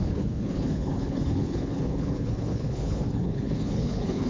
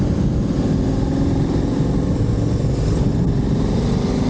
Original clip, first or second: second